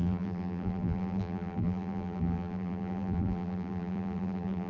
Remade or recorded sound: remade